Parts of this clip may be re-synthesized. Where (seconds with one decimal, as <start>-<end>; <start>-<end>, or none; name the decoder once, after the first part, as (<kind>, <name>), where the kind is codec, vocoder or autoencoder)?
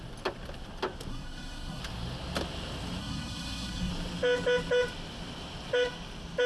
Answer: 1.1-1.8 (codec, SNAC); 3.0-3.9